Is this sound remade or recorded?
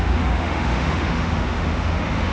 remade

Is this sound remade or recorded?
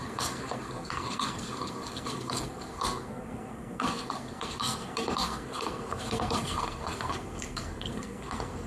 remade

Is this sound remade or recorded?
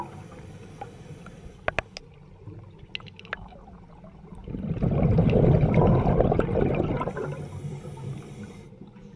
recorded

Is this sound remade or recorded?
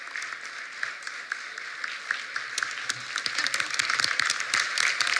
recorded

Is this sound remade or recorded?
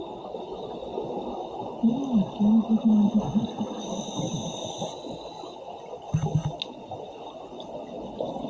recorded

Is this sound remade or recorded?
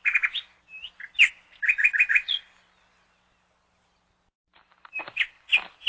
recorded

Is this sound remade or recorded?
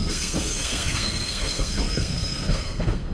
remade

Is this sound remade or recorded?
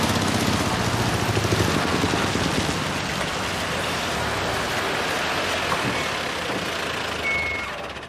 recorded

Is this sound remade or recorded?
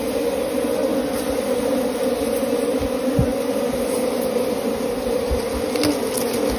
recorded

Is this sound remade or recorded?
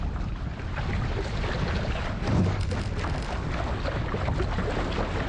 recorded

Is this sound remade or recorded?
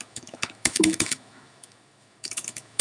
remade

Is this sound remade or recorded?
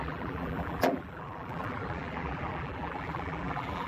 remade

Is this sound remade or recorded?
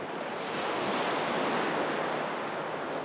recorded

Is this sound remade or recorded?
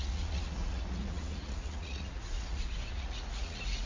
remade